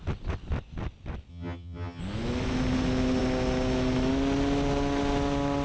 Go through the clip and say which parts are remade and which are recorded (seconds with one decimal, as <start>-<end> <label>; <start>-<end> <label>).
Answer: 0.0-1.3 recorded; 1.3-2.0 remade; 2.0-5.6 recorded